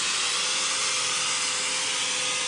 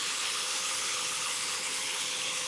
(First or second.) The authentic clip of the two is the first